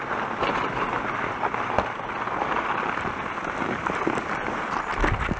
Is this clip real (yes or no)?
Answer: yes